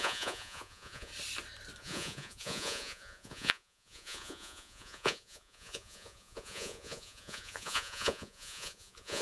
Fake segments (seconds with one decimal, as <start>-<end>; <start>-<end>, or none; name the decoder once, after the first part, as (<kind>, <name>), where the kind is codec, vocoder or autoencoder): 0.0-1.1 (vocoder, Vocos); 1.8-9.2